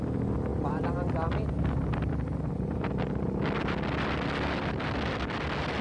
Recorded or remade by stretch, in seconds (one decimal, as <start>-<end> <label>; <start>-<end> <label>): 0.0-0.5 recorded; 0.5-2.9 remade; 2.9-5.8 recorded